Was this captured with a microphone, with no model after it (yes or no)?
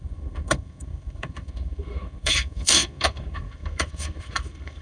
no